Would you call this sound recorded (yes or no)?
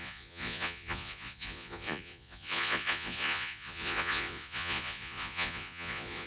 no